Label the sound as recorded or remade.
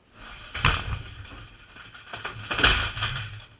recorded